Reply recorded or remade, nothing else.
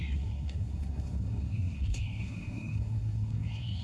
remade